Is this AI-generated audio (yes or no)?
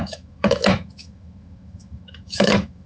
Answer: yes